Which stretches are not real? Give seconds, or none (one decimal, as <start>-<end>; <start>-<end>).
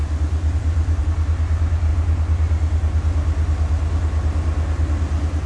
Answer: 0.0-1.0